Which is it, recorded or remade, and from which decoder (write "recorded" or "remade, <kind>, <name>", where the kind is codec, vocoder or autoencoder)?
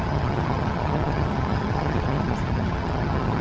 remade, vocoder, HiFi-GAN